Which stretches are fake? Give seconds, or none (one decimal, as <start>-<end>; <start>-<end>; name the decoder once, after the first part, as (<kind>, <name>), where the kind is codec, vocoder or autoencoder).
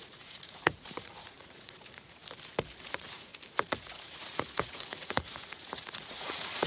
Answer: 0.0-2.2 (vocoder, Vocos); 2.8-3.3; 3.8-6.7